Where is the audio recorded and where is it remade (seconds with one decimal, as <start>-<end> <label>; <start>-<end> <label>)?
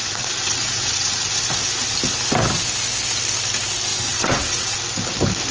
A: 0.0-1.4 remade; 1.4-3.9 recorded; 3.9-4.8 remade; 4.8-5.5 recorded